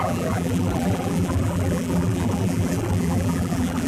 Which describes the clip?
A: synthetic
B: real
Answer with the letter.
A